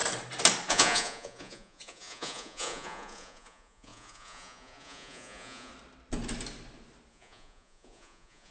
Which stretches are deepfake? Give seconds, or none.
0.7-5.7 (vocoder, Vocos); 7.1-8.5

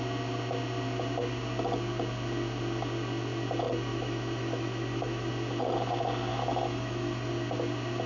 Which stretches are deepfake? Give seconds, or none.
3.9-5.3 (autoencoder, DAC-VAE); 6.3-7.3

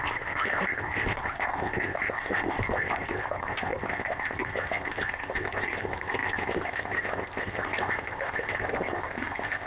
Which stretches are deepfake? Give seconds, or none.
0.0-9.7 (codec, ZipCodec)

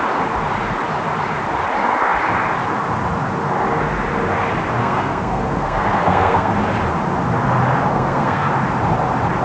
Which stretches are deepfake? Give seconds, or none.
4.8-6.5 (codec, SNAC); 7.9-8.5

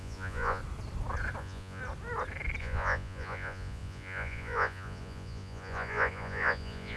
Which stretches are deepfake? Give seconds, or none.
0.0-0.6 (vocoder, Vocos); 1.4-1.8; 2.6-7.0

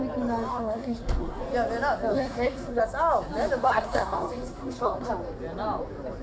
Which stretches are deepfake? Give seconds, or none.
0.5-1.4 (codec, SNAC); 2.1-2.8; 3.6-5.1